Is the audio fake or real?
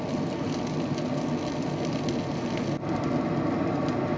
real